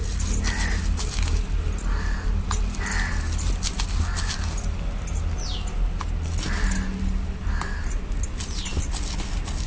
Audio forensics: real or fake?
real